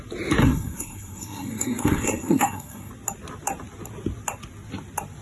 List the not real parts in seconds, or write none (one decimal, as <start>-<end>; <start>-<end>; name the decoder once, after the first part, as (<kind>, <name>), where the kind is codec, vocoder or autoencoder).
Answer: 0.4-2.9 (codec, SNAC)